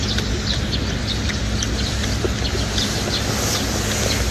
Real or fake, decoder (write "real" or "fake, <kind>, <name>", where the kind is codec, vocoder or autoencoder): real